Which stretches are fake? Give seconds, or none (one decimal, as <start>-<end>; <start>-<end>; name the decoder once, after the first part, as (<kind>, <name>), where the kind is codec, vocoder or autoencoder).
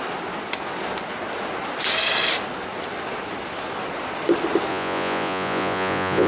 4.7-6.3 (vocoder, Vocos)